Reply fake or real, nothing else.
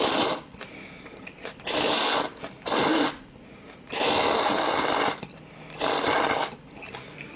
real